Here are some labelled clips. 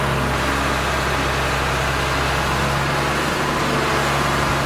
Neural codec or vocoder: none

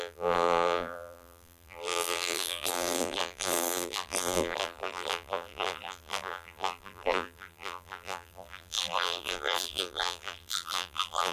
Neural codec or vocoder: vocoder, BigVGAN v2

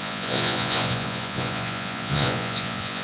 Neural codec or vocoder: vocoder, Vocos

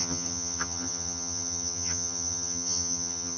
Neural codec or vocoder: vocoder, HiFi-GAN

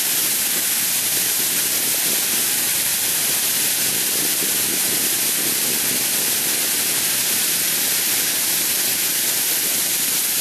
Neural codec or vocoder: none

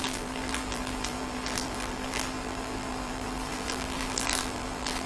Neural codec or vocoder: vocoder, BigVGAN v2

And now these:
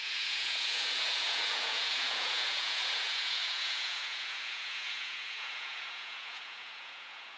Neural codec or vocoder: vocoder, Vocos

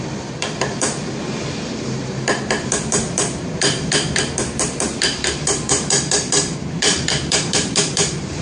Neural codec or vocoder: vocoder, BigVGAN v2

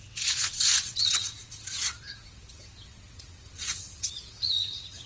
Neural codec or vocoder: vocoder, WaveNeXt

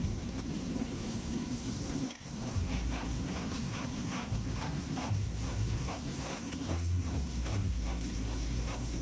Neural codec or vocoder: codec, SNAC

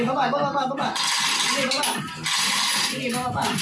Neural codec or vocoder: none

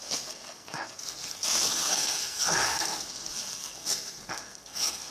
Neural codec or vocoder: codec, SNAC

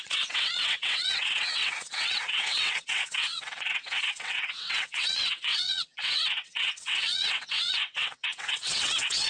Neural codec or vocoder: vocoder, WaveNeXt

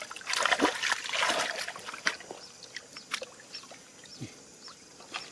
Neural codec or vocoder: none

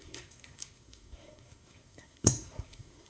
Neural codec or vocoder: codec, SNAC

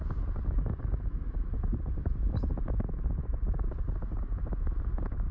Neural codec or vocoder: vocoder, BigVGAN v2